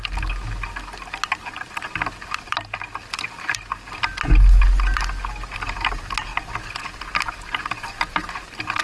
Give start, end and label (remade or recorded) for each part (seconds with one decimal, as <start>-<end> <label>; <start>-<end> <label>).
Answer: 0.0-8.8 recorded